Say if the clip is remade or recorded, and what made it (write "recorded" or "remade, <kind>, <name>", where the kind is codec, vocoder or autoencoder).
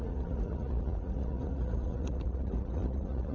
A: remade, vocoder, Vocos